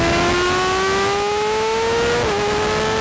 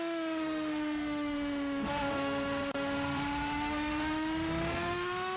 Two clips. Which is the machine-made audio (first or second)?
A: second